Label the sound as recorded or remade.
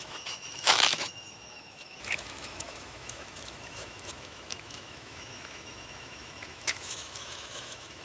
remade